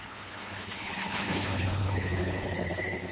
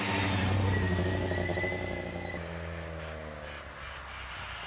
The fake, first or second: first